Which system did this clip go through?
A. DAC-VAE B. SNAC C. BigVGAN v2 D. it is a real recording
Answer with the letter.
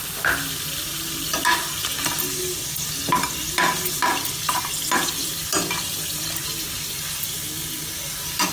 D